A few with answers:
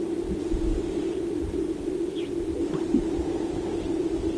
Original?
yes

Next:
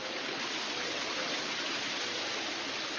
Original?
yes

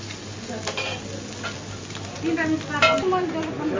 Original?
yes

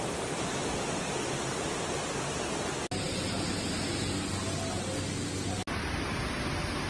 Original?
yes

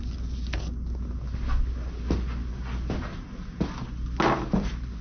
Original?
yes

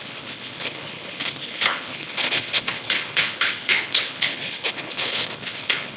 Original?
no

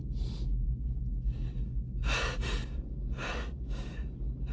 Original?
yes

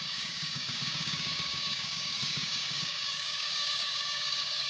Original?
no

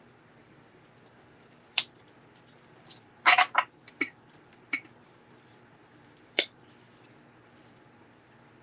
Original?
no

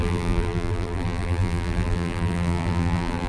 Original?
no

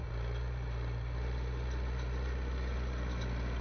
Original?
yes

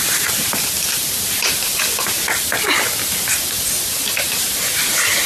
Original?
yes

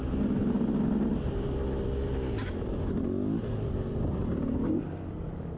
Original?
yes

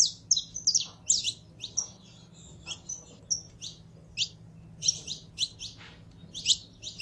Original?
yes